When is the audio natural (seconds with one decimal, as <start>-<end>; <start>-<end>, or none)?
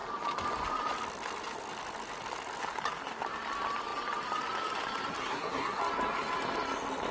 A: 0.0-5.2; 5.8-7.1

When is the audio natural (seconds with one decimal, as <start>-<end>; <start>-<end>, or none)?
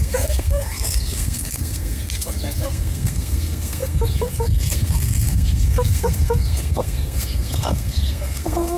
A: none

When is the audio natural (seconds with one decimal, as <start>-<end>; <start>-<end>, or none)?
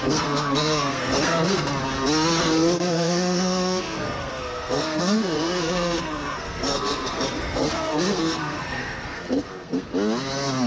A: 1.7-2.4; 9.9-10.7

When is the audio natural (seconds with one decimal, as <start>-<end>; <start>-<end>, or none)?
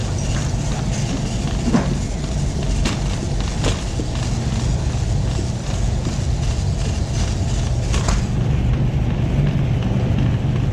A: 0.0-10.7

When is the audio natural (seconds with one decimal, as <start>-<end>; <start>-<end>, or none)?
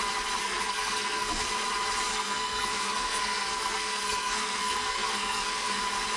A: 0.0-0.4; 1.4-2.1; 5.8-6.2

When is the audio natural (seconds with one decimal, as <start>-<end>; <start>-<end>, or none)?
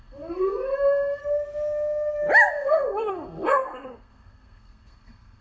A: 1.2-2.5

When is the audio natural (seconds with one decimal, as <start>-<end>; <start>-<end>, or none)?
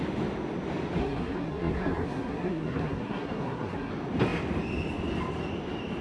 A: 0.0-1.0; 3.9-6.0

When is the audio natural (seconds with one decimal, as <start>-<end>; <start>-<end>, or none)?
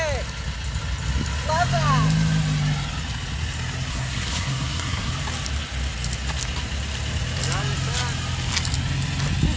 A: 0.0-3.9; 5.1-9.6